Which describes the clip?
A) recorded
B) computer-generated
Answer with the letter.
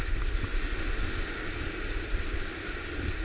A